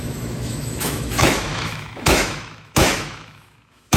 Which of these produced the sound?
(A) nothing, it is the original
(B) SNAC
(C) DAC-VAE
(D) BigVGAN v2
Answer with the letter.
C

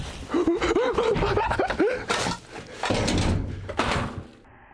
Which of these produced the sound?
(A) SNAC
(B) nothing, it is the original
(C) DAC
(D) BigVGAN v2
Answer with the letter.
B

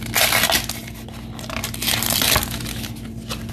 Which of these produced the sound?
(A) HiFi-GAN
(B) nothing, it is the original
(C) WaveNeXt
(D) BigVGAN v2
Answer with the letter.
B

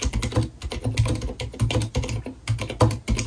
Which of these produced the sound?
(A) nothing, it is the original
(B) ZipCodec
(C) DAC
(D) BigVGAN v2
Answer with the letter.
A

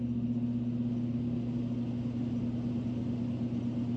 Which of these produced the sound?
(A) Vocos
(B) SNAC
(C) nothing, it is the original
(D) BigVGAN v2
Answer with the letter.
C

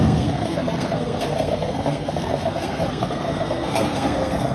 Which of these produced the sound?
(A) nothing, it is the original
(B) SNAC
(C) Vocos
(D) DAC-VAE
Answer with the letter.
B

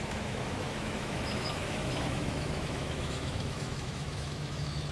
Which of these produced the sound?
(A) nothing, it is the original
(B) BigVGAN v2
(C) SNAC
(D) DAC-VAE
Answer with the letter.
D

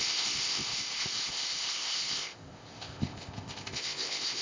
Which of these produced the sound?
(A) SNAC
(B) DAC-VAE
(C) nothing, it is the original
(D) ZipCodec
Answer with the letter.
D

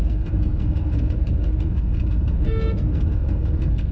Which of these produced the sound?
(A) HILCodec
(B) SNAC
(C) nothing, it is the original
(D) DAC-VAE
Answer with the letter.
B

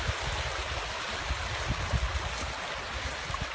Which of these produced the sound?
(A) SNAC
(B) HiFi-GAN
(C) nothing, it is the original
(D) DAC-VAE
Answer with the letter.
C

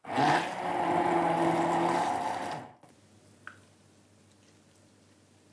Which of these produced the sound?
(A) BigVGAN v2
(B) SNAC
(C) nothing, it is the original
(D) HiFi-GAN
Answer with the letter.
C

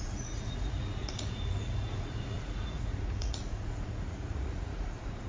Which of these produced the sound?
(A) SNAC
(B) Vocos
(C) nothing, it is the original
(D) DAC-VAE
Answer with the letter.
B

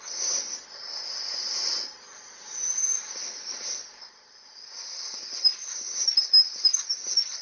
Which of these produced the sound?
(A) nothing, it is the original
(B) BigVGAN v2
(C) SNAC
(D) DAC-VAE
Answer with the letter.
B